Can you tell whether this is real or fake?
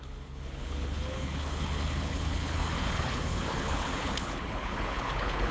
fake